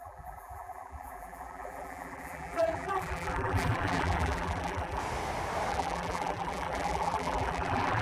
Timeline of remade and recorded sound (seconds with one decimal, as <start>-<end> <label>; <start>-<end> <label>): 0.0-5.0 remade; 5.0-5.7 recorded; 5.7-8.0 remade